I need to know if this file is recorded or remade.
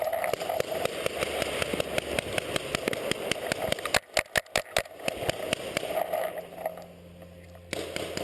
recorded